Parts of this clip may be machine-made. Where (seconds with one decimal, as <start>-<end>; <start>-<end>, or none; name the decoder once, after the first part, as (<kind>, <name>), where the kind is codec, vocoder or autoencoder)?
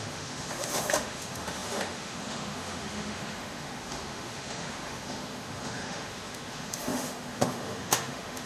0.0-8.5 (autoencoder, DAC-VAE)